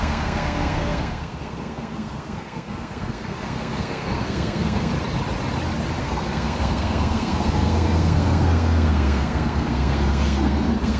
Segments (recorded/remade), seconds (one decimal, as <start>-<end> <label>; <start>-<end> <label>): 0.0-4.9 remade; 4.9-6.0 recorded; 6.0-11.0 remade